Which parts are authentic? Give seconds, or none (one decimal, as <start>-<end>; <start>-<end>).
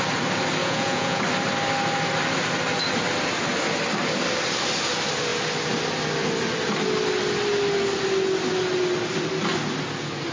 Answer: 0.0-0.6; 1.2-10.3